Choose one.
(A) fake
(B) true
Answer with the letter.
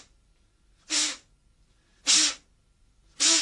B